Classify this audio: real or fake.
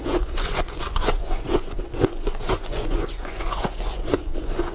fake